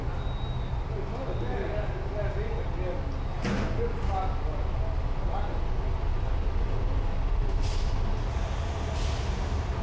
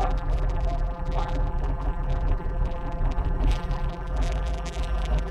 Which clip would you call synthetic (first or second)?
second